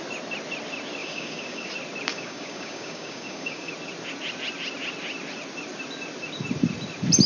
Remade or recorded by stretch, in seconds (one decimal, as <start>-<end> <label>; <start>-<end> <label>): 0.0-1.0 recorded; 1.0-1.7 remade; 1.7-2.1 recorded; 2.1-3.7 remade; 3.7-7.3 recorded

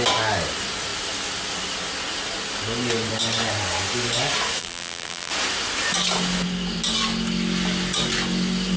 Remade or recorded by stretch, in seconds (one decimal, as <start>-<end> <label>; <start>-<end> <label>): 0.0-4.6 recorded; 4.6-5.3 remade; 5.3-8.8 recorded

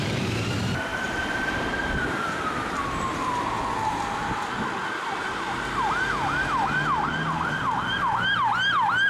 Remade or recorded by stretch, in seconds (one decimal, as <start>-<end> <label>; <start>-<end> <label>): 0.0-0.9 recorded; 0.9-3.6 remade; 3.6-9.1 recorded

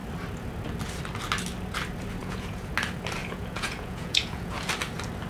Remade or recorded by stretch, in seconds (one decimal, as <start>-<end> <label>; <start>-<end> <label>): 0.0-2.2 recorded; 2.2-2.7 remade; 2.7-3.2 recorded; 3.2-4.7 remade; 4.7-5.3 recorded

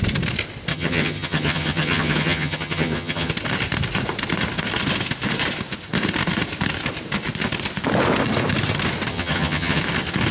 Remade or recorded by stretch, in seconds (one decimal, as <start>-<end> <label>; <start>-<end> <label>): 0.0-0.7 recorded; 0.7-3.3 remade; 3.3-9.1 recorded; 9.1-9.8 remade; 9.8-10.3 recorded